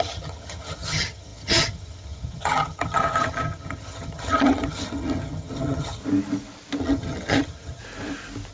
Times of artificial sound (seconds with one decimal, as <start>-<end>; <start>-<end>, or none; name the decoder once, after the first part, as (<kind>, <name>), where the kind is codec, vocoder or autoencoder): 0.0-6.0 (vocoder, HiFi-GAN); 6.8-7.8